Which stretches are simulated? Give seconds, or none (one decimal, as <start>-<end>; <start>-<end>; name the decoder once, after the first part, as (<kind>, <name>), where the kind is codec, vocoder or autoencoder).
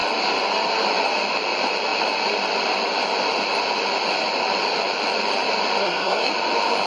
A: 5.8-6.3 (codec, SNAC)